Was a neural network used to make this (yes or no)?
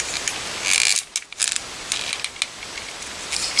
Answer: no